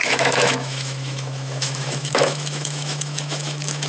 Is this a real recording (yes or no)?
no